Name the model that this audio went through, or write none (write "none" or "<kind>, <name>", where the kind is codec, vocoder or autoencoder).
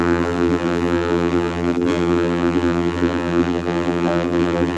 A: vocoder, BigVGAN v2